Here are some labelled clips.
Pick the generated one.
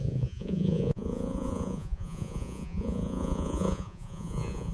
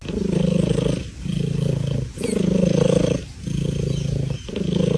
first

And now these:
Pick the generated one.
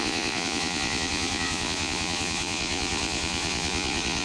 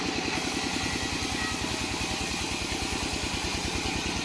first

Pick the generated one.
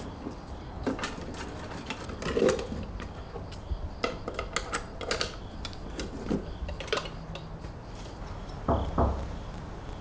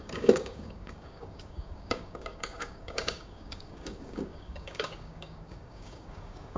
second